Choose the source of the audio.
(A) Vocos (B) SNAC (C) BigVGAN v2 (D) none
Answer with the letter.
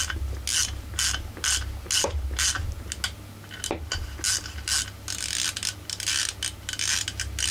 D